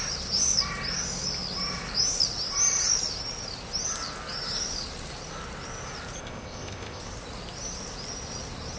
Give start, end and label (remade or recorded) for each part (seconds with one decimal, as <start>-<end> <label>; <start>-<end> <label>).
0.0-6.2 recorded; 6.2-7.0 remade; 7.0-8.8 recorded

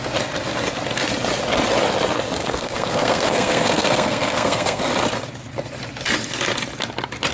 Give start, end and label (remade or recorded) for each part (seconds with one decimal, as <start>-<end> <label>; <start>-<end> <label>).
0.0-2.4 recorded; 2.4-4.9 remade; 4.9-7.3 recorded

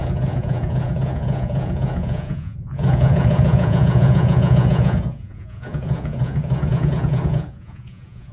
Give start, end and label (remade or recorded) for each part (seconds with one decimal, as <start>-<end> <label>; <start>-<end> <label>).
0.0-8.3 remade

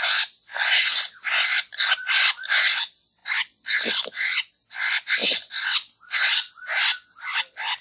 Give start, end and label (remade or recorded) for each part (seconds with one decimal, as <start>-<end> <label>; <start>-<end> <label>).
0.0-1.5 recorded; 1.5-2.3 remade; 2.3-3.2 recorded; 3.2-4.1 remade; 4.1-7.8 recorded

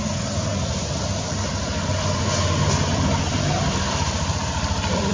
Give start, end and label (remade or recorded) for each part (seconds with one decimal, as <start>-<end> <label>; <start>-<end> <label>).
0.0-5.1 recorded

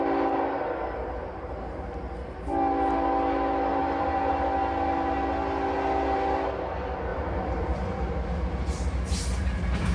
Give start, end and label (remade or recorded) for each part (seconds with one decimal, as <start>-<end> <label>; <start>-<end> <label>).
0.0-3.8 recorded; 3.8-4.3 remade; 4.3-7.1 recorded; 7.1-8.1 remade; 8.1-9.9 recorded

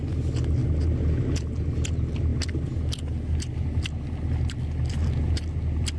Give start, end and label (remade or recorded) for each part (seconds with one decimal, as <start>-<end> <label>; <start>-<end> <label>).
0.0-6.0 recorded